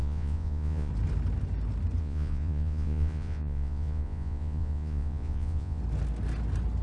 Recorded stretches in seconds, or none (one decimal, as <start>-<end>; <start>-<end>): 0.9-2.0; 5.8-6.8